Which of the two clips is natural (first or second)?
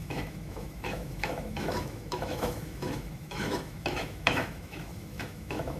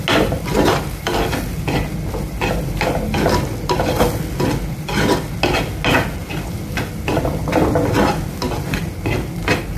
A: second